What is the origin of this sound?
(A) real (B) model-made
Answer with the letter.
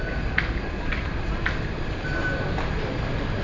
A